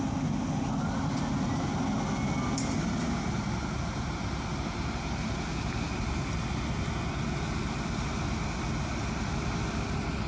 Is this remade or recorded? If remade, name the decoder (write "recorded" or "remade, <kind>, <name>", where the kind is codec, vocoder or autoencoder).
recorded